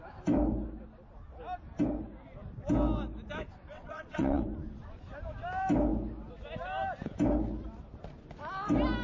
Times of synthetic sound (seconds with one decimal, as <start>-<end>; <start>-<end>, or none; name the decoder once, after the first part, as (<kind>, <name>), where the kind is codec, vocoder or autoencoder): 3.5-4.4 (vocoder, WaveNeXt)